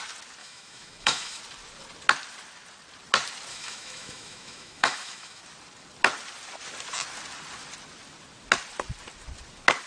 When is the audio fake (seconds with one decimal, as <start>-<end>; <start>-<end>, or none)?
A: 0.4-1.4; 3.5-5.4